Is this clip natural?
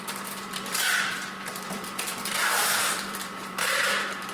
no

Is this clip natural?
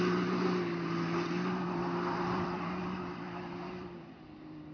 no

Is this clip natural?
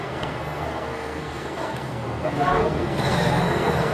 no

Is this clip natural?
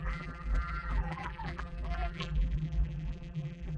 no